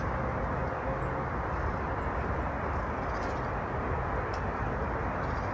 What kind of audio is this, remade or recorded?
recorded